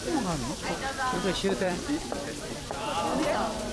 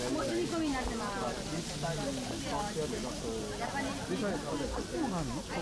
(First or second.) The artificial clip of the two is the first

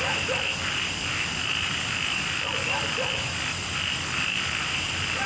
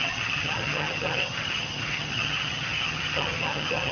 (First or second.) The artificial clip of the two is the second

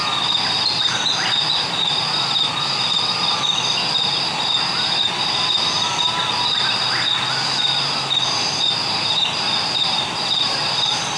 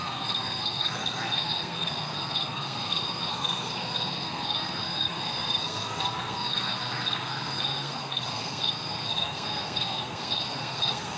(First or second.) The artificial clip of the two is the second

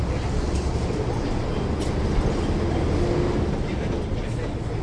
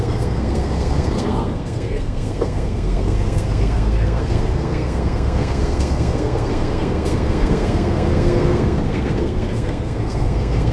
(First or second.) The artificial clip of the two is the second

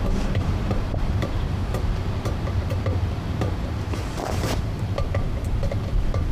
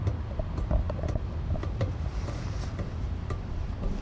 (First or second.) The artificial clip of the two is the first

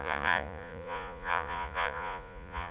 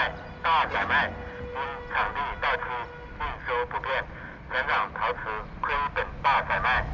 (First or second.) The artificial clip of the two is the first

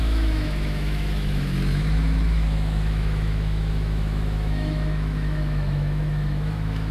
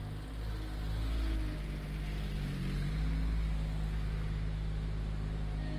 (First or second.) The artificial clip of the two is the first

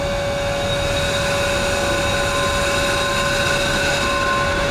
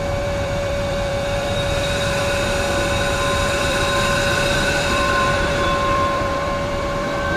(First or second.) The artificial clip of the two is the second